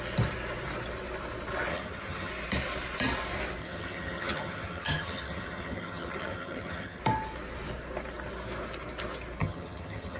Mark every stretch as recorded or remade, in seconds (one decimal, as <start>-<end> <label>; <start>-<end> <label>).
0.0-1.7 recorded; 1.7-2.3 remade; 2.3-3.6 recorded; 3.6-7.0 remade; 7.0-9.4 recorded; 9.4-10.2 remade